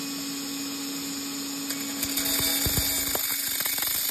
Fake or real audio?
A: real